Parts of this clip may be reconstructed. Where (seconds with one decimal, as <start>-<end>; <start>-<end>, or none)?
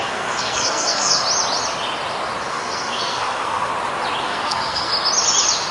0.0-1.2; 2.5-3.7; 4.2-4.9